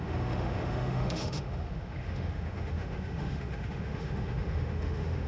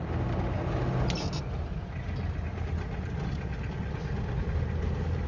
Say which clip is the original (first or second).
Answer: second